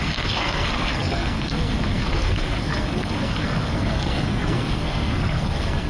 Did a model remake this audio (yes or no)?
yes